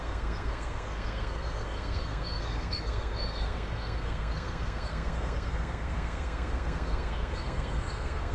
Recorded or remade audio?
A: remade